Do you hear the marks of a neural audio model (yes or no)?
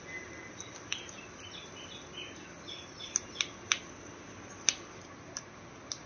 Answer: no